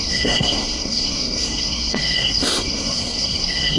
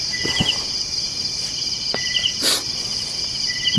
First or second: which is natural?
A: second